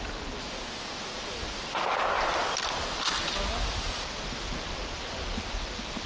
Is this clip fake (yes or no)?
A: no